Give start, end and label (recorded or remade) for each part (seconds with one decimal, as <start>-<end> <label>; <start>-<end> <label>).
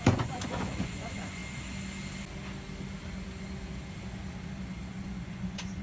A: 0.0-1.4 remade; 1.4-4.9 recorded; 4.9-5.8 remade